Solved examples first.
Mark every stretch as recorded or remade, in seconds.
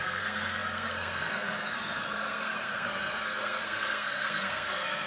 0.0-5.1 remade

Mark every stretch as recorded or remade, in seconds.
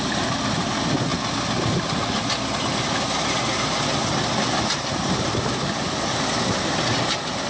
0.0-7.5 recorded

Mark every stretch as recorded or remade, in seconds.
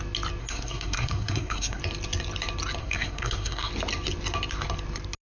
0.0-0.4 recorded; 0.4-1.8 remade; 1.8-2.8 recorded; 2.8-3.7 remade; 3.7-5.2 recorded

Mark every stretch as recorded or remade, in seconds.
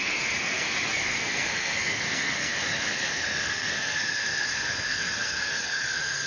0.0-6.3 remade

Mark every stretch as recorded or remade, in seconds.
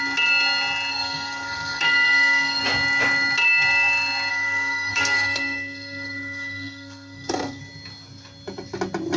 0.0-0.9 recorded; 0.9-2.6 remade; 2.6-4.3 recorded; 4.3-7.6 remade; 7.6-9.2 recorded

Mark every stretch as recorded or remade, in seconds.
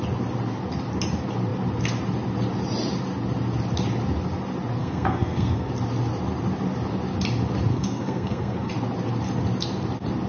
0.0-4.8 recorded; 4.8-5.7 remade; 5.7-7.7 recorded; 7.7-8.7 remade; 8.7-10.3 recorded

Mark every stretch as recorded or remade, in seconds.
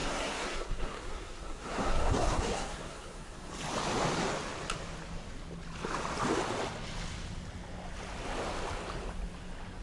0.0-3.5 remade; 3.5-9.8 recorded